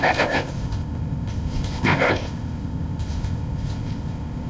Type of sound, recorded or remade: remade